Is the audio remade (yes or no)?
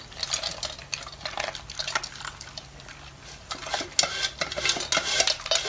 no